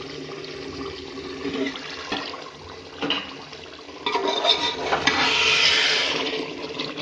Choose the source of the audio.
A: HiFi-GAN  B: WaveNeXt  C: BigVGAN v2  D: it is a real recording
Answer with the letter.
D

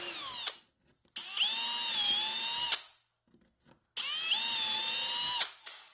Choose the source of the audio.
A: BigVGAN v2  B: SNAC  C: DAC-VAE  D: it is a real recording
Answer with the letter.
D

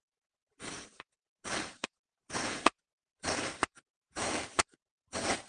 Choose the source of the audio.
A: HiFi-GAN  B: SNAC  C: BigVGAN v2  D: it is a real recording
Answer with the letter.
C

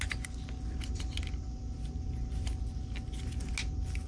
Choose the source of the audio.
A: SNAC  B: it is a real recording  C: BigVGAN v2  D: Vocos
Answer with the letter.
B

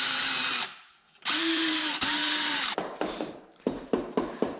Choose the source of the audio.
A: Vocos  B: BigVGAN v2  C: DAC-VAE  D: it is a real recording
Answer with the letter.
B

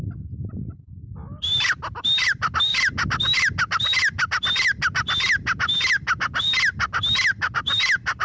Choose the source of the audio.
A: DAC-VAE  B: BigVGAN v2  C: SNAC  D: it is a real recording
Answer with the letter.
D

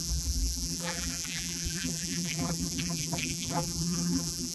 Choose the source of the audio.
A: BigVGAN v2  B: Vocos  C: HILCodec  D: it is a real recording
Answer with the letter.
A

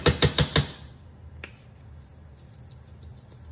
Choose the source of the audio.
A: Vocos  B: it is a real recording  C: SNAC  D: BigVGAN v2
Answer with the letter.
B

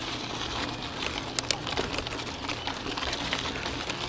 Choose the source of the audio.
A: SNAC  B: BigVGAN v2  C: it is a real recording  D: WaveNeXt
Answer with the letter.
C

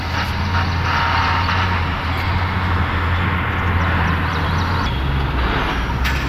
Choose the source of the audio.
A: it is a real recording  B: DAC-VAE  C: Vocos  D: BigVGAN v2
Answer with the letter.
A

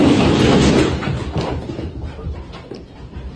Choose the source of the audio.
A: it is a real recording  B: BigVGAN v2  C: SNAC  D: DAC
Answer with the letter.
B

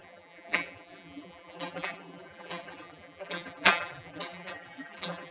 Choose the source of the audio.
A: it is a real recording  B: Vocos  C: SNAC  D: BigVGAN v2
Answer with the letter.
D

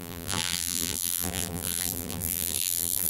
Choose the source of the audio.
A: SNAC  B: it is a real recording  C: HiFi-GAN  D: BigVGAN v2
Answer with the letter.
D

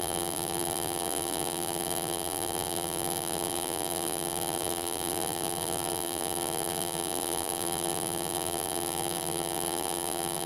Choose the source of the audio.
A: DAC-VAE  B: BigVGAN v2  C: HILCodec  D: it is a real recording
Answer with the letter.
B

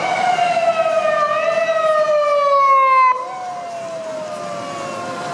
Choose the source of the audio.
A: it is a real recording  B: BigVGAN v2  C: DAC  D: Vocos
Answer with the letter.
A